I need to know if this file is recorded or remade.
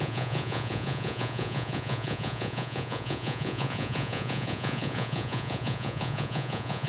remade